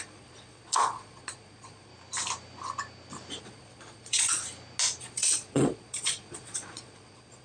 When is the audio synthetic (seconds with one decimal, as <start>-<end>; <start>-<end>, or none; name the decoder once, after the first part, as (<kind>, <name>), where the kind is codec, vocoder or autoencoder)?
0.0-1.9 (vocoder, Vocos); 3.4-4.4; 5.0-7.4